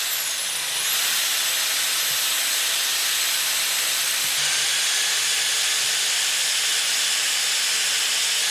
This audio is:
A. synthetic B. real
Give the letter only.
B